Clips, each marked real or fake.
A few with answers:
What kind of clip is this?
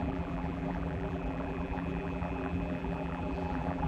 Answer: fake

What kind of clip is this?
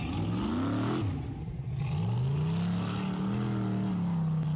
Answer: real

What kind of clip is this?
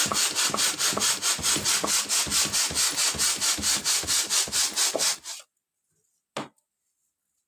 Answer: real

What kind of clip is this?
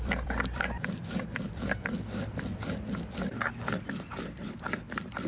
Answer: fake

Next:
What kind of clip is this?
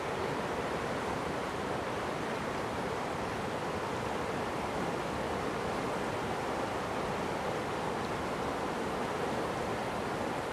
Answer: real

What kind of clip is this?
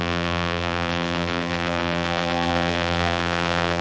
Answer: fake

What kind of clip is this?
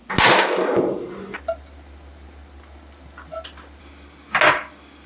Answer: real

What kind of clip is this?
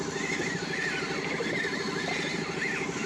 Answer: fake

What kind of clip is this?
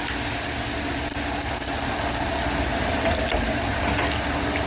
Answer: real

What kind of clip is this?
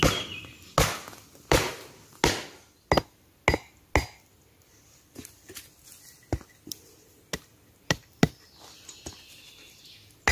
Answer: real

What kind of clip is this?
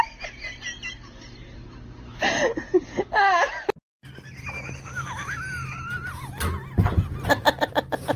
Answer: real